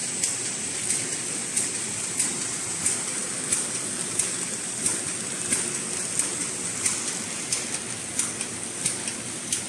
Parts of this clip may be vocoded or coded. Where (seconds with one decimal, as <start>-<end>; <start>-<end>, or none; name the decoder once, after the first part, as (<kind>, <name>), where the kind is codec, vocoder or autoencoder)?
none